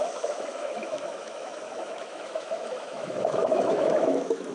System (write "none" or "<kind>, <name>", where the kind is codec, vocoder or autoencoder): autoencoder, DAC-VAE